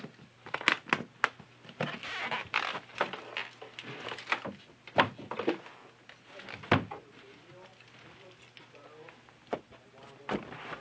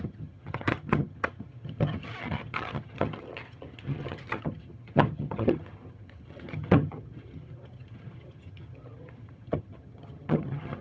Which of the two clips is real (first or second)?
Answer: first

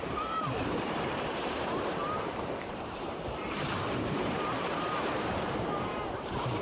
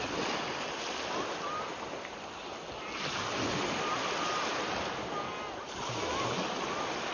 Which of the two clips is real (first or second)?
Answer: second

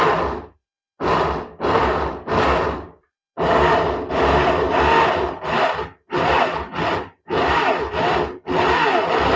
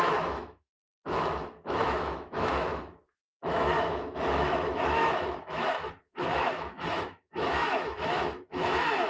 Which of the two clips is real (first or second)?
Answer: first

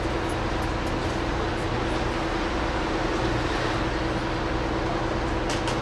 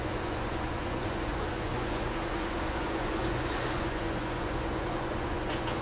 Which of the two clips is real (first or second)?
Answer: first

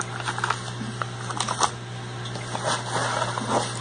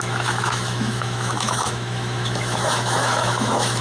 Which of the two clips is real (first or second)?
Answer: first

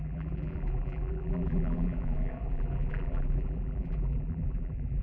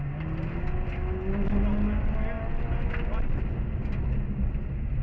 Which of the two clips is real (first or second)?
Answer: second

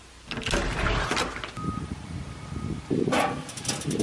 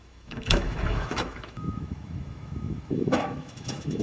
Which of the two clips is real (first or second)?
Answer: first